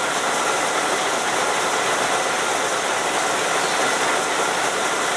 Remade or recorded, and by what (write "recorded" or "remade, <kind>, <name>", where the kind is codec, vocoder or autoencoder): recorded